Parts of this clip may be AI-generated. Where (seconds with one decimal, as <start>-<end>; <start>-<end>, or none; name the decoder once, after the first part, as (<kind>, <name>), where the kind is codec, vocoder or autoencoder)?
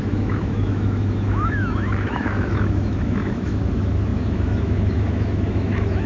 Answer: 0.0-6.1 (autoencoder, DAC-VAE)